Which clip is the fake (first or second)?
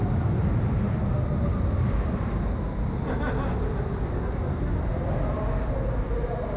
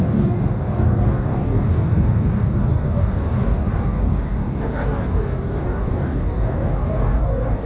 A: second